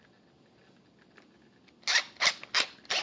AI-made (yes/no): no